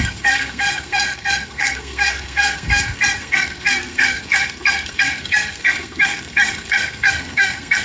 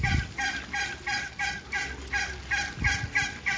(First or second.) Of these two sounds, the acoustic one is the second